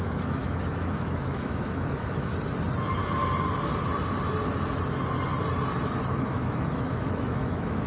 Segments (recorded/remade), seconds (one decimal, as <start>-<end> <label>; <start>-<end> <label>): 0.0-2.3 remade; 2.3-6.1 recorded; 6.1-7.9 remade